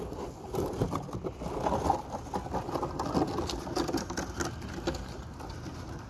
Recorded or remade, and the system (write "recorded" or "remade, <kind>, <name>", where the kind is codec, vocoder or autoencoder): recorded